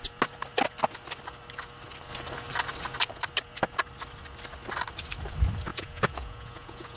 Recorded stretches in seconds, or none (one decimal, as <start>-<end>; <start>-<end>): 0.0-5.7

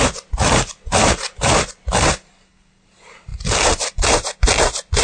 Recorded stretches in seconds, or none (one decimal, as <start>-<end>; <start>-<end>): 0.0-5.0

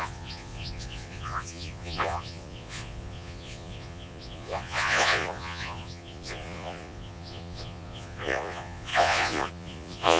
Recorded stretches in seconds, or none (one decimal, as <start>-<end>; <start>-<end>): none

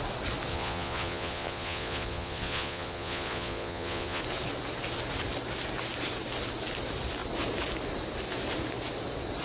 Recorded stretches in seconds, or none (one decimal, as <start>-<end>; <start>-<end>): 0.0-0.5; 4.2-9.4